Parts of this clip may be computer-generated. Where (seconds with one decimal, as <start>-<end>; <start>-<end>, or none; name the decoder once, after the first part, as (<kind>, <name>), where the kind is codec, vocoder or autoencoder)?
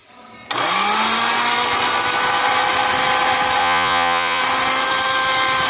3.6-4.4 (vocoder, Vocos)